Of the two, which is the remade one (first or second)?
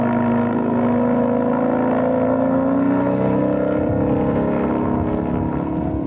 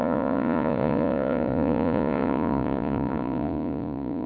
second